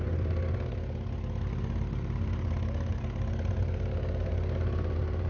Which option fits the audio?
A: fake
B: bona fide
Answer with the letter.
B